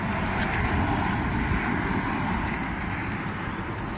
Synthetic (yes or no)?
no